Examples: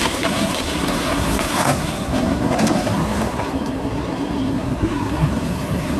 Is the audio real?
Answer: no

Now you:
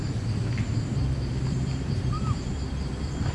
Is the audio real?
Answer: no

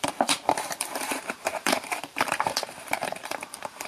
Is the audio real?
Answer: no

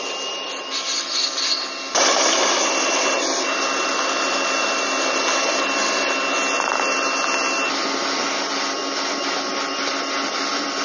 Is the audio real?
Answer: yes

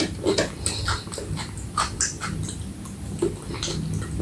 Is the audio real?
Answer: yes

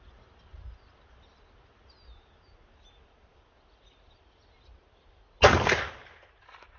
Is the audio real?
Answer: yes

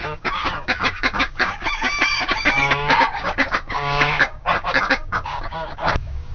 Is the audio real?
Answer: no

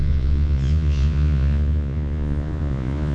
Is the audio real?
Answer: no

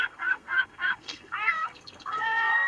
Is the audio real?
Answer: no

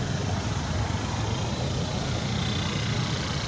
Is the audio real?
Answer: yes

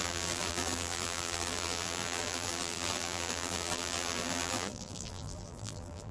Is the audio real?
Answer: no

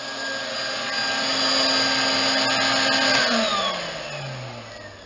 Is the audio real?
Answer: yes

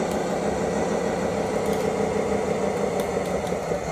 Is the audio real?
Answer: yes